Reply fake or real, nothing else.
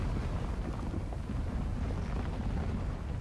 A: real